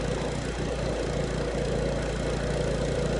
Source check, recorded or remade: recorded